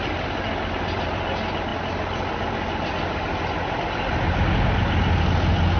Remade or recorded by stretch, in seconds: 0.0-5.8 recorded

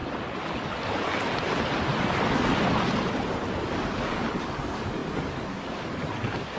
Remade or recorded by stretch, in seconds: 0.0-3.5 recorded; 3.5-6.6 remade

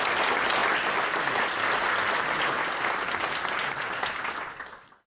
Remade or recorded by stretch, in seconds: 0.0-5.1 recorded

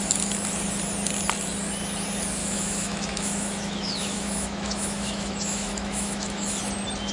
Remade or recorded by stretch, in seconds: 0.0-2.4 recorded; 2.4-6.6 remade; 6.6-7.1 recorded

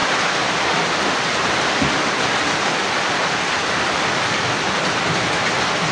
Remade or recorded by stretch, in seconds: 0.0-5.9 recorded

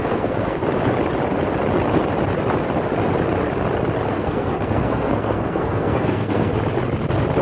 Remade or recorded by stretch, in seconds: 0.0-0.6 remade; 0.6-4.1 recorded; 4.1-6.5 remade; 6.5-7.4 recorded

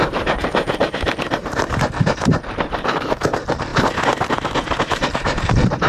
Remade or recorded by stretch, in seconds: 0.0-3.7 remade; 3.7-4.8 recorded; 4.8-5.9 remade

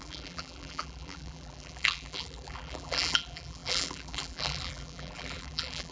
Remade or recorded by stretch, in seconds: 0.0-5.9 remade